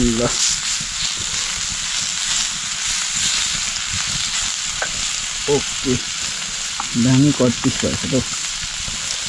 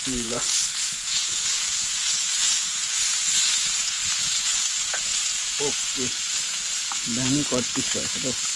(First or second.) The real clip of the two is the first